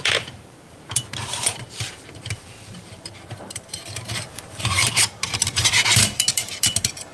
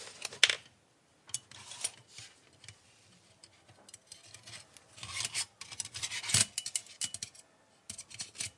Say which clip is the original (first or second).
second